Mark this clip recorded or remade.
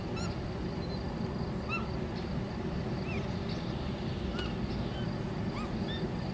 recorded